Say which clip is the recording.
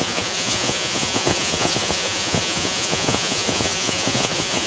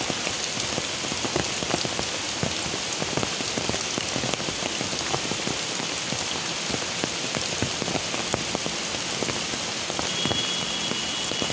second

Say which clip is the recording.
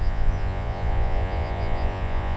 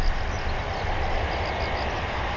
second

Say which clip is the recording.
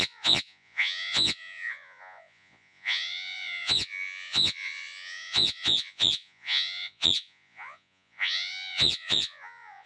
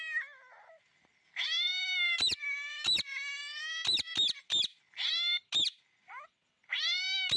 second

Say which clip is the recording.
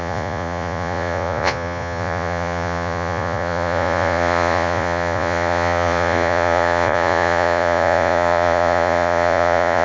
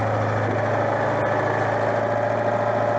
second